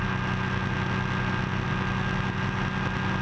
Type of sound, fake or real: real